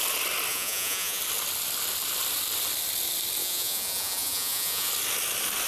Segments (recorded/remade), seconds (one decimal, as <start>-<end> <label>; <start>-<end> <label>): 0.0-0.5 recorded; 0.5-1.2 remade; 1.2-3.4 recorded; 3.4-4.9 remade; 4.9-5.7 recorded